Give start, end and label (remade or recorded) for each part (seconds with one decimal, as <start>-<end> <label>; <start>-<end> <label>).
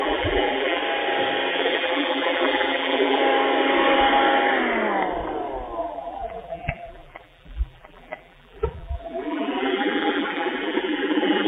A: 0.0-0.8 remade; 0.8-1.5 recorded; 1.5-3.2 remade; 3.2-5.8 recorded; 5.8-11.5 remade